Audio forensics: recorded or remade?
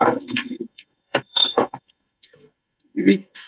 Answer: remade